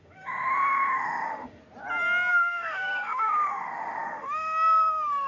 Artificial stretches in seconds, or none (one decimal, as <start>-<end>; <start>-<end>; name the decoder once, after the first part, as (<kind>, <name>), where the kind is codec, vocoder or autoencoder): 0.0-1.6 (autoencoder, DAC-VAE); 2.3-5.3